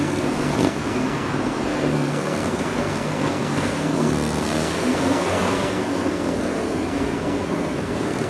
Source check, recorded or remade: remade